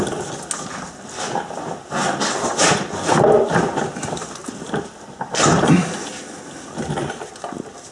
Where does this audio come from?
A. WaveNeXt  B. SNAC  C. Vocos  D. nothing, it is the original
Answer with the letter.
D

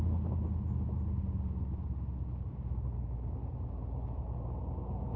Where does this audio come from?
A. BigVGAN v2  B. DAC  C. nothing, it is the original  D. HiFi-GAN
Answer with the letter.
C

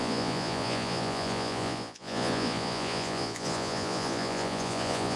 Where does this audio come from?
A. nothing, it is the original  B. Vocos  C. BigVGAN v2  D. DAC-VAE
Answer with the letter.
B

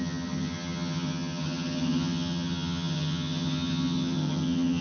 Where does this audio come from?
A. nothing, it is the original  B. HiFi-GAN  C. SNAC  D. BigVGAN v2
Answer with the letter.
B